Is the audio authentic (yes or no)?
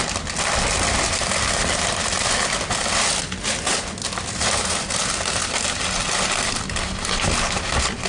yes